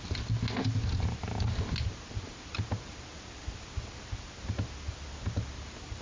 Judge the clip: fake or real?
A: real